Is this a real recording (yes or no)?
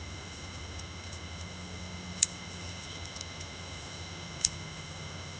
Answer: no